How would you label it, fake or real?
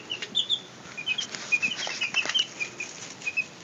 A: real